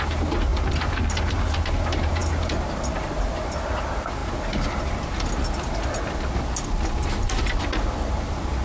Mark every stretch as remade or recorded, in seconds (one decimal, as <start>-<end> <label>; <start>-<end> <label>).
0.0-8.6 recorded